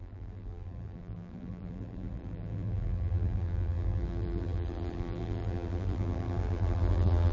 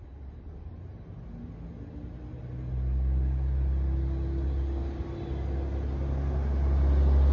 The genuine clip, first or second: second